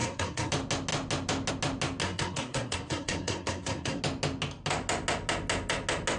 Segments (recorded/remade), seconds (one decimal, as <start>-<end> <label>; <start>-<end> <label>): 0.0-0.5 remade; 0.5-2.0 recorded; 2.0-4.0 remade; 4.0-6.2 recorded